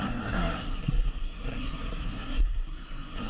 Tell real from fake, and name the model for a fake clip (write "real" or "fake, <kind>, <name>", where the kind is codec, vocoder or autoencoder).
fake, codec, SNAC